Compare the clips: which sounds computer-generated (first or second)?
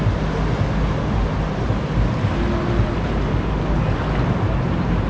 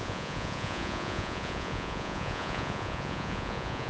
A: second